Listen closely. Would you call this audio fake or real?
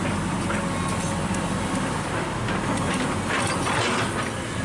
real